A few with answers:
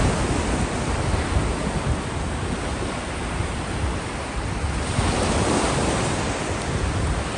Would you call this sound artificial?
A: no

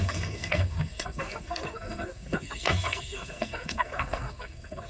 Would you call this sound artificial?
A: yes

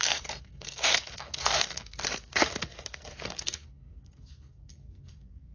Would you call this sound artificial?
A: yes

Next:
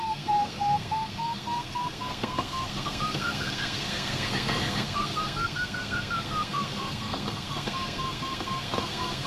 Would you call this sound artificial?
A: yes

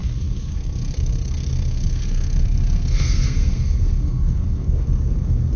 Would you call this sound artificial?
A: yes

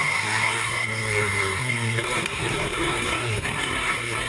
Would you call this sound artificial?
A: yes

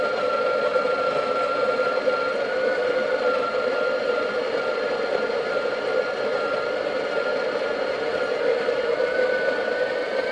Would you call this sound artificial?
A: no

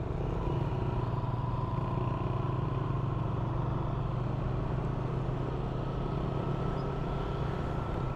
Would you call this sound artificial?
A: no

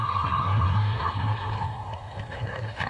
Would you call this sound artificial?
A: yes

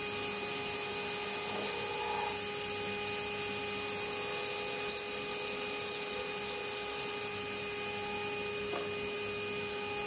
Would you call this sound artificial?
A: no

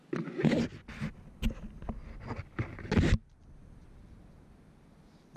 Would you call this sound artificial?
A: no